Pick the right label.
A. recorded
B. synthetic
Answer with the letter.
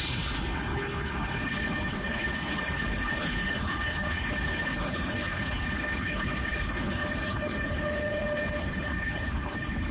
B